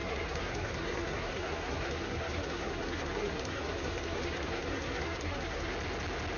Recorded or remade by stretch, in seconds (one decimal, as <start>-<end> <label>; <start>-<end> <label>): 0.0-5.7 remade; 5.7-6.4 recorded

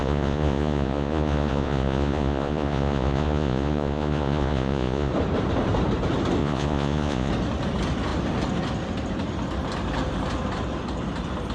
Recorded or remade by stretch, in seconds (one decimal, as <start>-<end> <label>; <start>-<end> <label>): 0.0-5.1 remade; 5.1-6.4 recorded; 6.4-7.3 remade; 7.3-11.5 recorded

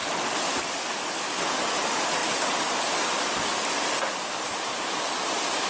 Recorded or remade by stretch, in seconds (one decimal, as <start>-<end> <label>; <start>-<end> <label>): 0.0-5.7 recorded

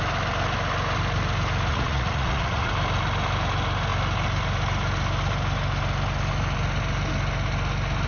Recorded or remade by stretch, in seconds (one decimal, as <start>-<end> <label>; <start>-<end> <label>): 0.0-1.7 recorded; 1.7-2.7 remade; 2.7-8.1 recorded

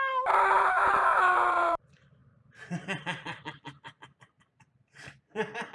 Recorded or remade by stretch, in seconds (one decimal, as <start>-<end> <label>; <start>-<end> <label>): 0.0-5.7 remade

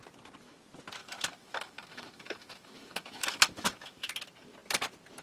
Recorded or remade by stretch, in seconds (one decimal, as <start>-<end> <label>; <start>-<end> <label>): 0.0-1.0 recorded; 1.0-4.1 remade; 4.1-5.2 recorded

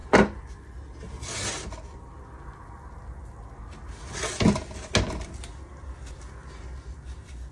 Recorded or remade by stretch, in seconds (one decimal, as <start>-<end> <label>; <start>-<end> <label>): 0.0-7.5 recorded